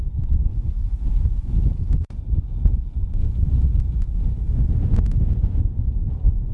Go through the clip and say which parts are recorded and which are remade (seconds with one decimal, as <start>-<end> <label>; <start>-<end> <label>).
0.0-0.5 recorded; 0.5-2.2 remade; 2.2-3.2 recorded; 3.2-5.6 remade; 5.6-6.5 recorded